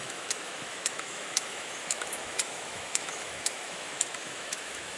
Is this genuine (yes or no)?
no